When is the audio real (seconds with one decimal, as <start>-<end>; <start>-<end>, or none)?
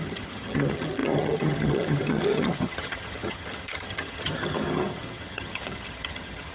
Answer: none